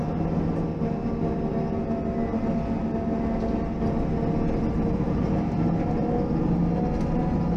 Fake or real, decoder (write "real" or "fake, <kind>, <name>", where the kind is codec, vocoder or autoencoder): real